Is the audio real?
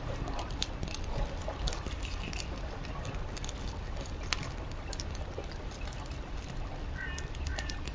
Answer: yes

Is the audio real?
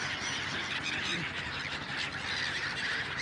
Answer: yes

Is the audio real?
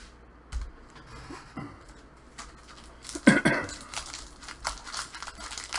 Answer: yes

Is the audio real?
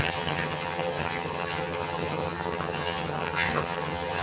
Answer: no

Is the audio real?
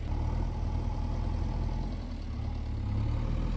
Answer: yes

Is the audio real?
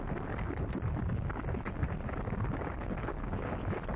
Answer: yes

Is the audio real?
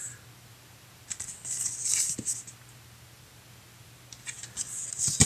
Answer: yes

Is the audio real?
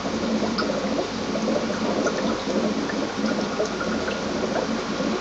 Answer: no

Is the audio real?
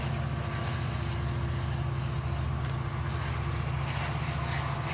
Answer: yes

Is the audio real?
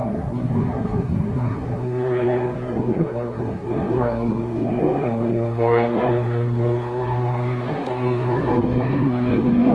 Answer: no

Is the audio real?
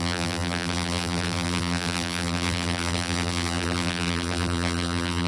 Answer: no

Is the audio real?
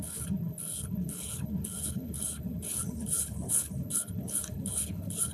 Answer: no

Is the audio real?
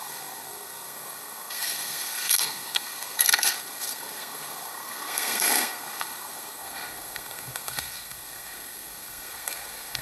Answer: no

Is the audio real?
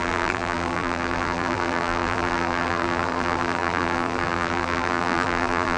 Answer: no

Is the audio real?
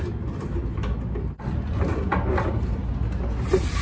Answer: yes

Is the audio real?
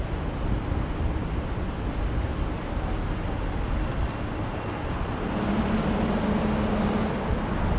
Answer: yes